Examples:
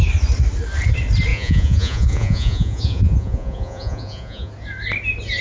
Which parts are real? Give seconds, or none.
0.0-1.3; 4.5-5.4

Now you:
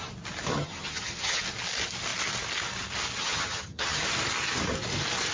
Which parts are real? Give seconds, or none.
0.0-0.5; 1.4-3.2; 4.0-5.3

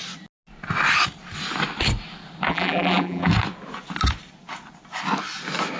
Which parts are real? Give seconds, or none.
0.0-2.5; 3.3-5.8

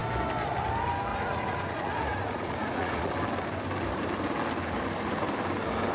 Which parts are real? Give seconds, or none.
0.0-1.1; 3.1-5.9

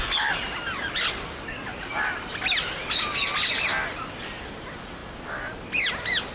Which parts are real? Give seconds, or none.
0.0-6.3

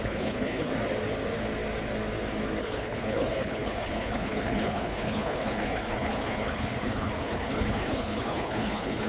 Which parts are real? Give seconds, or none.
0.7-2.6

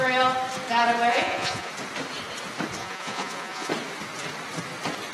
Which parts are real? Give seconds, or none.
0.0-1.1; 1.7-2.8; 3.7-5.1